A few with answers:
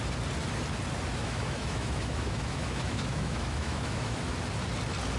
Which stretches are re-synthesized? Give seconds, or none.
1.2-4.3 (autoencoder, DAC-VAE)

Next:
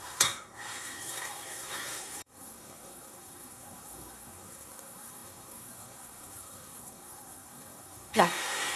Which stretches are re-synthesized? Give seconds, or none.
0.0-8.8 (codec, SNAC)

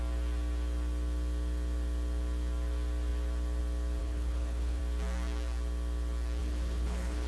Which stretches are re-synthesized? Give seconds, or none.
4.0-4.8 (codec, HILCodec); 6.4-7.3

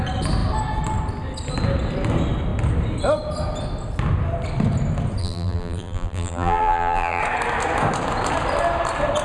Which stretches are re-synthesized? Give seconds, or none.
5.2-7.2 (vocoder, BigVGAN v2)

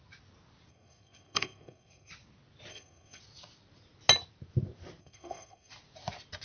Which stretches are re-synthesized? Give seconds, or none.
0.7-2.1 (codec, SNAC); 2.7-3.2; 5.0-5.7

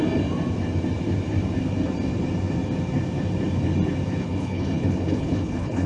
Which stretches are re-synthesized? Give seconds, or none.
4.2-5.9 (codec, HILCodec)